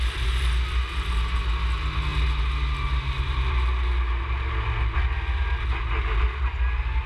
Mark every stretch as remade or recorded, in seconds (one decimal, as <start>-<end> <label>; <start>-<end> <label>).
0.0-7.1 recorded